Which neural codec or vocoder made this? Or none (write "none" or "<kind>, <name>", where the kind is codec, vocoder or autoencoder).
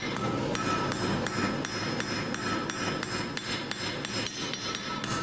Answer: none